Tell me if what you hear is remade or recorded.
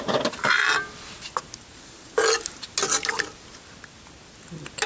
recorded